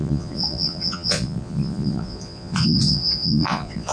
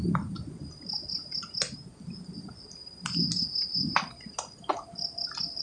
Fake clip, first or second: first